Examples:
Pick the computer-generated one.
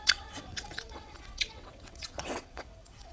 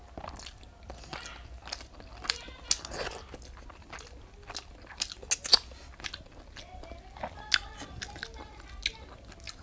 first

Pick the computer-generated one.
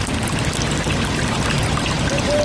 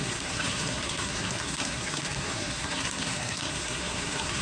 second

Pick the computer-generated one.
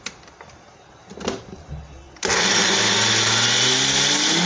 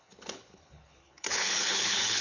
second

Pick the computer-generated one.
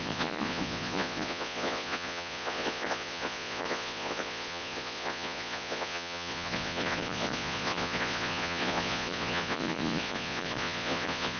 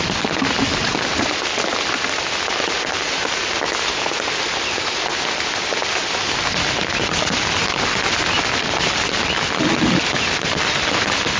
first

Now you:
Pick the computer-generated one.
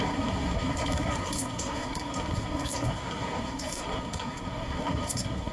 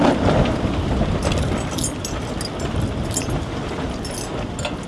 first